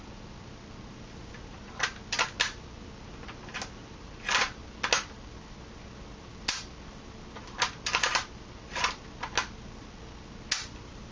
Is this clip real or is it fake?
real